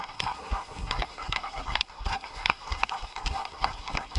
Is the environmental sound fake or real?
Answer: fake